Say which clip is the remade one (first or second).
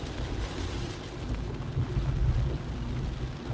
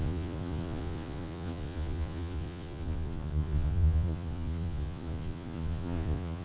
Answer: second